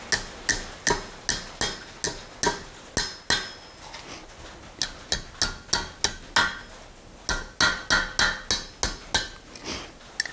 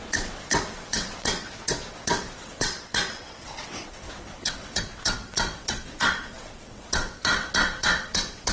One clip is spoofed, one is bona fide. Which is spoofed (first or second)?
second